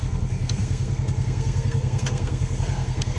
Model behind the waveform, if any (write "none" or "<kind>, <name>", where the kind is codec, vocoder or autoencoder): codec, SNAC